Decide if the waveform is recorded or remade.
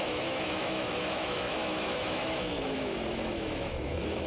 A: remade